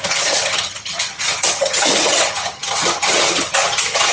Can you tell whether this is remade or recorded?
remade